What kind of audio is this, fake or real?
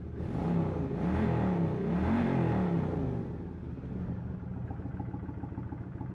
real